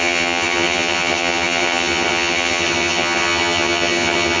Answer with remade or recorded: remade